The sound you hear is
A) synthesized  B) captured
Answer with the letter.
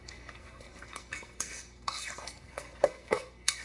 A